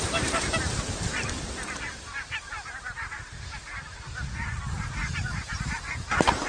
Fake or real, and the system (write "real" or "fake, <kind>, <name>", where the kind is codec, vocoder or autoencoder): real